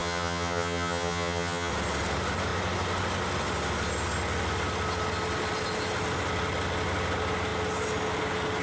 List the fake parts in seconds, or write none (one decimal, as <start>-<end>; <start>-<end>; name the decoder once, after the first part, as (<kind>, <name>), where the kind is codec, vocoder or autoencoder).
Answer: 0.0-1.7 (vocoder, HiFi-GAN)